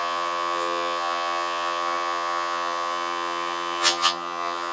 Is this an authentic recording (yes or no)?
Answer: no